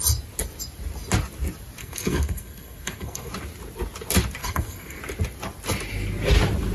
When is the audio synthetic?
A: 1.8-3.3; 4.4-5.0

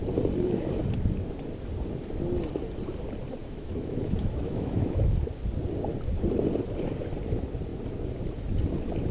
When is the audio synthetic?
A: 3.4-5.0

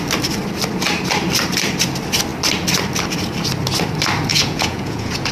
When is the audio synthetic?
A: 4.3-5.3

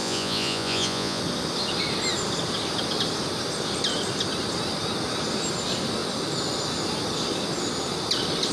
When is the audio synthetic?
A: 0.0-1.2